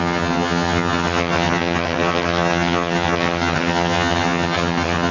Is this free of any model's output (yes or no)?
no